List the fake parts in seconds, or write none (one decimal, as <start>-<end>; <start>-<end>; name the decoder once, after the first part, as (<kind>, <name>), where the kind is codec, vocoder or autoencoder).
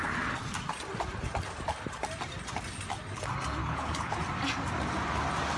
3.6-4.2 (codec, HILCodec)